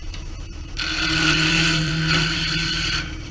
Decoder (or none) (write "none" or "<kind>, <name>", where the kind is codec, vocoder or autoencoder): vocoder, BigVGAN v2